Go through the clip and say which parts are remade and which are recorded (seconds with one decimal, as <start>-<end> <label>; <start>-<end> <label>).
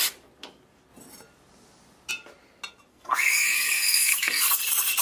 0.0-2.9 recorded; 2.9-4.5 remade; 4.5-5.0 recorded